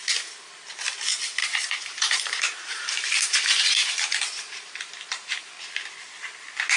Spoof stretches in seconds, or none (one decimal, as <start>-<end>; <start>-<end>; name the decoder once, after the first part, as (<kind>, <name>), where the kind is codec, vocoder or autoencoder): 1.4-5.5 (vocoder, BigVGAN v2)